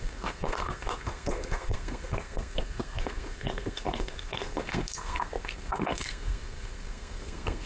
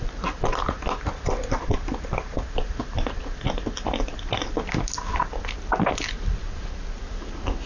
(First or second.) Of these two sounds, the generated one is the first